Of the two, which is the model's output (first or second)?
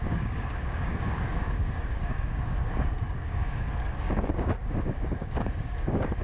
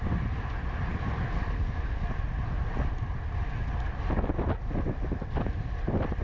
first